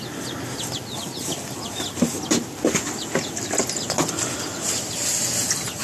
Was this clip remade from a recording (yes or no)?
no